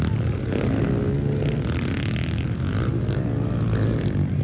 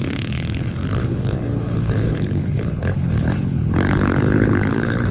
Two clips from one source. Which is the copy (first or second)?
second